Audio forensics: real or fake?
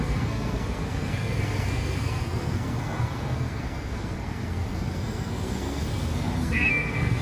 fake